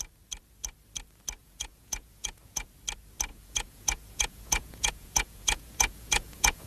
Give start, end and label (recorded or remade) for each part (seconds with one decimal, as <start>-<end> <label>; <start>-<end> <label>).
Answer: 0.0-1.4 recorded; 1.4-2.7 remade; 2.7-3.3 recorded; 3.3-6.7 remade